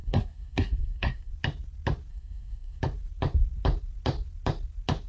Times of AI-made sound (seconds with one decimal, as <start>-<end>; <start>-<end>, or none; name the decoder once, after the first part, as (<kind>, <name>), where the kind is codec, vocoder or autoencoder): 0.0-1.3 (codec, SNAC); 2.1-2.8